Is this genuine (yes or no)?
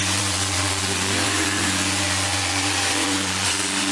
no